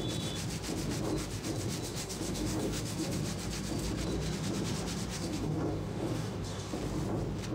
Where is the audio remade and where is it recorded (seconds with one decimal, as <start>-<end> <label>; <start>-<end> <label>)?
0.0-1.9 recorded; 1.9-3.1 remade; 3.1-5.1 recorded; 5.1-6.7 remade; 6.7-7.5 recorded